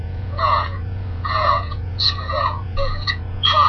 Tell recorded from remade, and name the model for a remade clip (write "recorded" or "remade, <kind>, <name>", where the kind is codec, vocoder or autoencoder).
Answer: remade, vocoder, Vocos